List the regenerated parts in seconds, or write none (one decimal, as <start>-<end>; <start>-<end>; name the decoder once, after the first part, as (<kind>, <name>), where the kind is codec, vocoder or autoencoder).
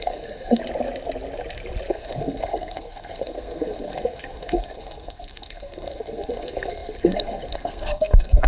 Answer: 0.0-0.6 (codec, SNAC); 1.9-8.5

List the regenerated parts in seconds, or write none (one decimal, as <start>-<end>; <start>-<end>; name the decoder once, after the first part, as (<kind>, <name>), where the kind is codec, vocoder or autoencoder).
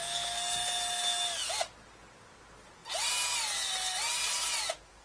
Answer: none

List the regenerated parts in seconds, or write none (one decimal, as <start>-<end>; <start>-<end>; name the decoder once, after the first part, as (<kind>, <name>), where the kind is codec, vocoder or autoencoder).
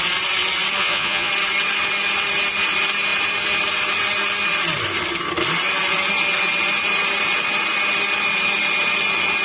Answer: 0.8-1.3 (vocoder, Vocos)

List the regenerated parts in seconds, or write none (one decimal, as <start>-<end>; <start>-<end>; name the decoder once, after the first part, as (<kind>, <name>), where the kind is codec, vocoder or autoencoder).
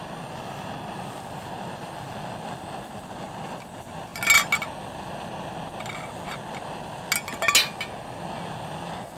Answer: none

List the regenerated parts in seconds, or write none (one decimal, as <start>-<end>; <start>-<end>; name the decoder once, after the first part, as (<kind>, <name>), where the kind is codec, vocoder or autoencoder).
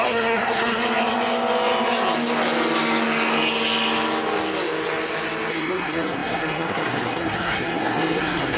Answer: 0.0-0.8 (codec, SNAC); 5.5-8.6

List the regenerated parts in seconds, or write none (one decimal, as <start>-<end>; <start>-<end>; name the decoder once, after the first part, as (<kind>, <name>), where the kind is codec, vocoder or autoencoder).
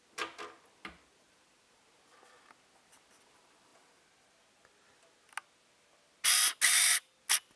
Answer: none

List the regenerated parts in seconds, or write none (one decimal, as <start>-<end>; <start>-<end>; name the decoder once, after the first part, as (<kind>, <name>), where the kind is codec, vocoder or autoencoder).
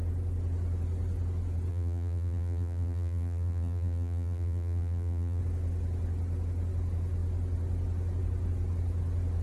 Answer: 1.7-5.4 (vocoder, BigVGAN v2)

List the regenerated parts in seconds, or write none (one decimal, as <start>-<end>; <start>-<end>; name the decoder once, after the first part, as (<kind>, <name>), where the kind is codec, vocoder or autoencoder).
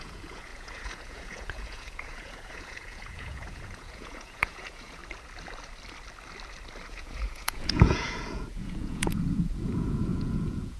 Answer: 0.0-5.0 (vocoder, Vocos); 6.9-10.8